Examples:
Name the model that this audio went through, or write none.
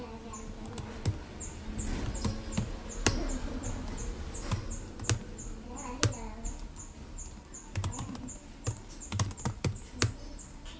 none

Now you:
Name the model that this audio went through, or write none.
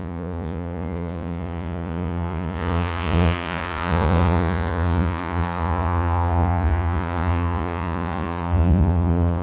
vocoder, Vocos